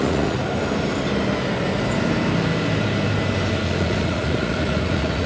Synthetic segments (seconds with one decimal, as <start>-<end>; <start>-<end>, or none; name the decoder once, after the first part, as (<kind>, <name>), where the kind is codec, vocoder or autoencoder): 0.0-0.4 (vocoder, Vocos); 3.6-5.3